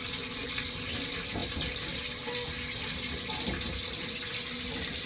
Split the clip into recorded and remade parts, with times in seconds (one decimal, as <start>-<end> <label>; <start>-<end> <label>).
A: 0.0-5.1 recorded